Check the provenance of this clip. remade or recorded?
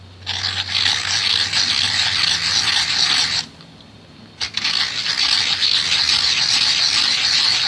recorded